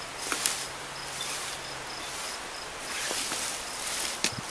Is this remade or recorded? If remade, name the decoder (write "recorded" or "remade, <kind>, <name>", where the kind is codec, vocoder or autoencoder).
recorded